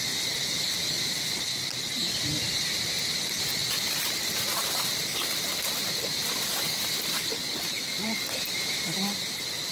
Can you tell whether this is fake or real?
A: real